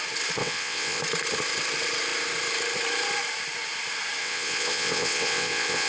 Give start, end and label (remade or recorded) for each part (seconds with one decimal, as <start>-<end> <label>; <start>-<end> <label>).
0.0-0.4 recorded; 0.4-1.0 remade; 1.0-4.2 recorded; 4.2-5.9 remade